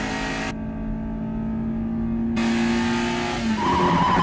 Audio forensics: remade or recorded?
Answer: recorded